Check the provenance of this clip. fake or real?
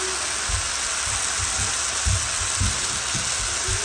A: real